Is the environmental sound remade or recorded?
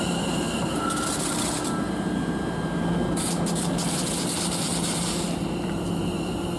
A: remade